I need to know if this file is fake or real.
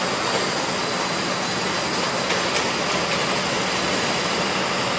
real